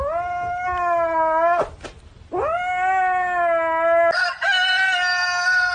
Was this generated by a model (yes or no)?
no